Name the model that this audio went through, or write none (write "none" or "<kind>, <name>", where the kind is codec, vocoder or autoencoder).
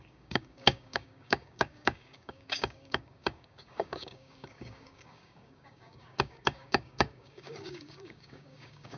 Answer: codec, DAC